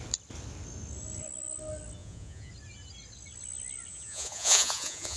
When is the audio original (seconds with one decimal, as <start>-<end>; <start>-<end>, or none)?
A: 0.0-2.0; 2.5-3.9